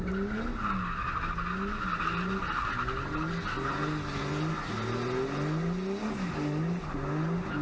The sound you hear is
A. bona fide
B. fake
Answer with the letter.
A